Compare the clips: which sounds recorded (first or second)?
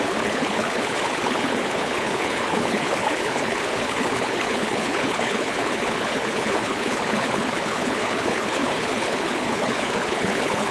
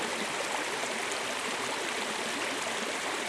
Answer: second